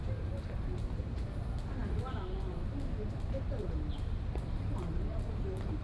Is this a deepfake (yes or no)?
no